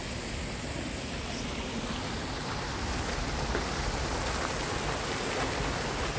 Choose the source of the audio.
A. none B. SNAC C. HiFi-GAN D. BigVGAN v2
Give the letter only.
A